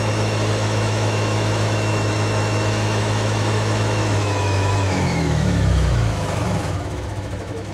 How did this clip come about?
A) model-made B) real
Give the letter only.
A